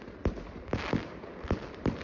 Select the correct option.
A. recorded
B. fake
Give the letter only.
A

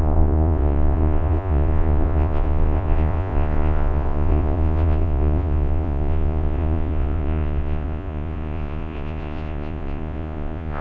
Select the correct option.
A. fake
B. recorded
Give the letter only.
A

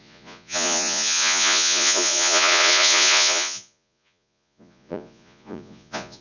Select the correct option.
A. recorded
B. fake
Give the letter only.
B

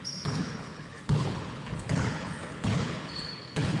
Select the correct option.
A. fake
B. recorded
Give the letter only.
A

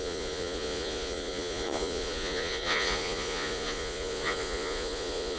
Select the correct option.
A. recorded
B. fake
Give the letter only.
B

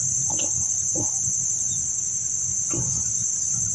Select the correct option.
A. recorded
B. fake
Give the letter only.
A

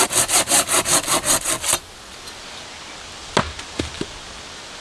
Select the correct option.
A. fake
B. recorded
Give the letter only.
B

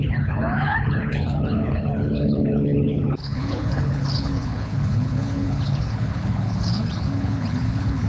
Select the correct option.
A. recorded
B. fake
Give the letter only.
B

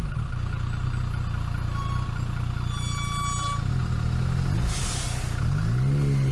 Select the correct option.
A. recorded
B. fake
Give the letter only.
A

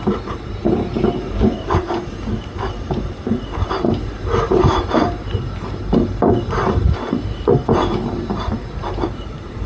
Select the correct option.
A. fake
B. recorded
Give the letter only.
A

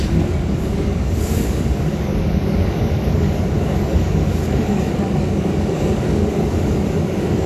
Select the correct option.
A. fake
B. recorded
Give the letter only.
A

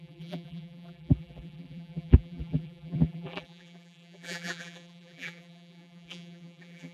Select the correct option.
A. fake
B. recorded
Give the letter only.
A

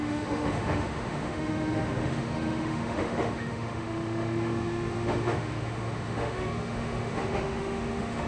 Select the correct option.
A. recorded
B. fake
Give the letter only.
B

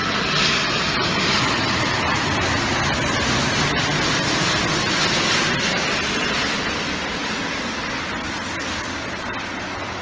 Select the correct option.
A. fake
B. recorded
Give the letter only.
B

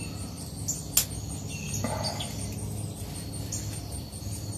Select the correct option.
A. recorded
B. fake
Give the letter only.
A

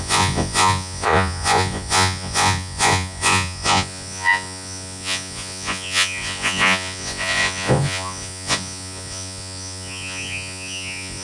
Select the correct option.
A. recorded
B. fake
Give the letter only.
B